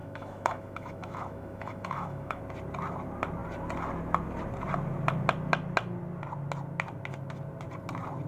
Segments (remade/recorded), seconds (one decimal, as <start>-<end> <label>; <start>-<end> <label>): 0.0-2.4 remade; 2.4-8.3 recorded